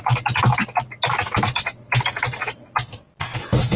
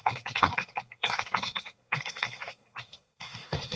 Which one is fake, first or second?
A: second